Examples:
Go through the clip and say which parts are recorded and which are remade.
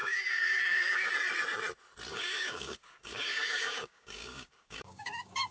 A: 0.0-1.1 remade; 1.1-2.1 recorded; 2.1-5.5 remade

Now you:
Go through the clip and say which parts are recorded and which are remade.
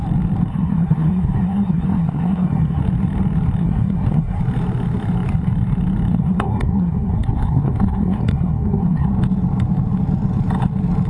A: 0.0-0.5 recorded; 0.5-2.8 remade; 2.8-3.6 recorded; 3.6-4.4 remade; 4.4-6.1 recorded; 6.1-9.1 remade; 9.1-11.1 recorded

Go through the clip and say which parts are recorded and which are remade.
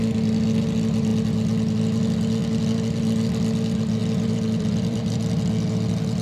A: 0.0-4.0 recorded; 4.0-5.1 remade; 5.1-6.2 recorded